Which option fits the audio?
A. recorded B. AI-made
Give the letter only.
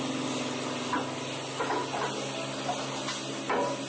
A